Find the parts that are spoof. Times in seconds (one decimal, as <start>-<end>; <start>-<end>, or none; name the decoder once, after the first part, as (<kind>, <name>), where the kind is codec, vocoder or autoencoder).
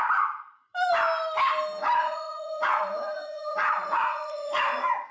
1.8-5.1 (vocoder, Vocos)